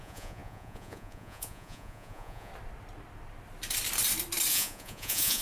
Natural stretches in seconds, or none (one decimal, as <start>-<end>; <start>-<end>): 2.5-4.5